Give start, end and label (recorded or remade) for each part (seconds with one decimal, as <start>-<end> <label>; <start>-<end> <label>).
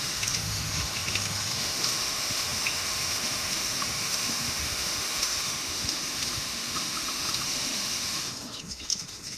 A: 0.0-9.4 remade